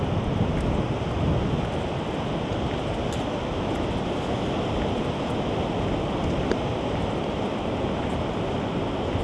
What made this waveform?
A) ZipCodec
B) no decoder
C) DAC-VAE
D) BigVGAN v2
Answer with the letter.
B